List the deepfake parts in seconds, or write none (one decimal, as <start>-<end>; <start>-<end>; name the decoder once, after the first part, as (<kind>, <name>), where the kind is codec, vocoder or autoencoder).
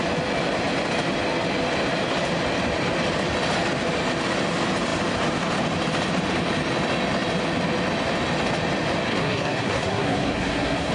9.1-10.9 (codec, SNAC)